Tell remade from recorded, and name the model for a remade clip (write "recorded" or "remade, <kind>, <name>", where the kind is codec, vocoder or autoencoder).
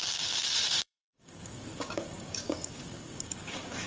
remade, codec, DAC